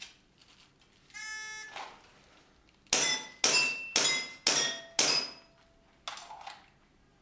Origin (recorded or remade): recorded